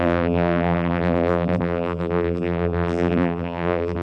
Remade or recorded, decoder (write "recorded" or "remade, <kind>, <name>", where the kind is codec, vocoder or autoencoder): remade, vocoder, BigVGAN v2